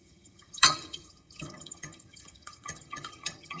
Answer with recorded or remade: remade